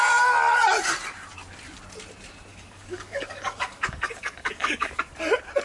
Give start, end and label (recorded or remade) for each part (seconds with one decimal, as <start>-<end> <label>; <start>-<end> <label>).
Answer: 0.0-2.5 recorded; 2.5-5.0 remade; 5.0-5.6 recorded